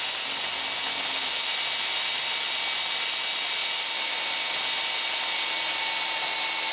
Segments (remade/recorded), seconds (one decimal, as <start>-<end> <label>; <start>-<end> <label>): 0.0-6.7 recorded